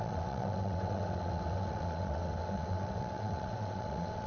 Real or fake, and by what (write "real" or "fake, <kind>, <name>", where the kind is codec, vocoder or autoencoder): fake, vocoder, WaveNeXt